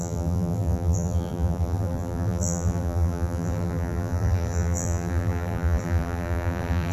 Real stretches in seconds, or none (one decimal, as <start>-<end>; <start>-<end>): none